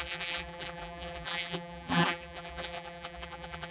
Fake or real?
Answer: fake